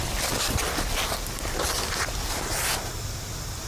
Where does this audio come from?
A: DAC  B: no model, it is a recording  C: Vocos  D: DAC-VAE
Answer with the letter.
B